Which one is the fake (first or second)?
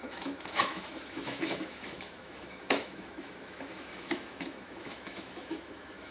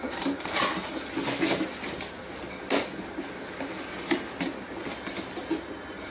first